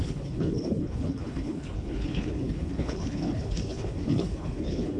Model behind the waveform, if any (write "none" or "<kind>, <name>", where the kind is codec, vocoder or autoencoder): codec, HILCodec